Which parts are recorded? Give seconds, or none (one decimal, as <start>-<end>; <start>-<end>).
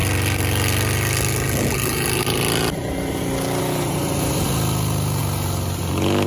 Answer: 0.0-6.3